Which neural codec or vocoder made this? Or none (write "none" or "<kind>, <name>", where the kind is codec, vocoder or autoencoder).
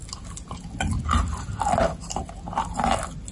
none